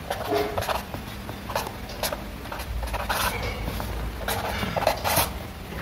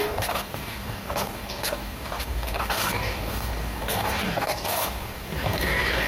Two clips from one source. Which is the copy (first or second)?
second